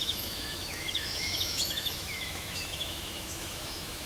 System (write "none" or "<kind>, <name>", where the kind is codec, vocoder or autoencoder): autoencoder, DAC-VAE